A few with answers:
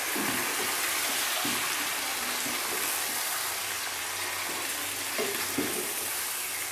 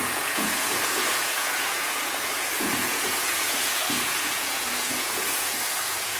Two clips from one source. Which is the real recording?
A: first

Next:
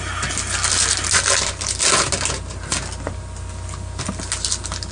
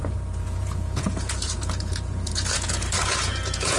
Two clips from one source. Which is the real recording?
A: first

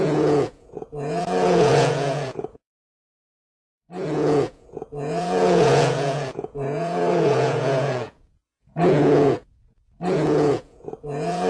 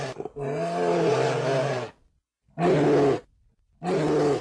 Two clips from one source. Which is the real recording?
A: second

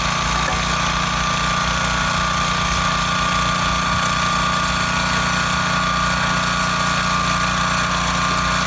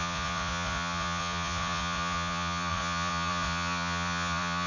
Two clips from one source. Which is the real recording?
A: first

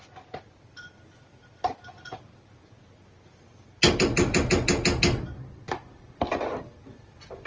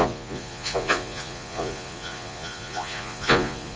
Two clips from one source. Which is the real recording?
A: first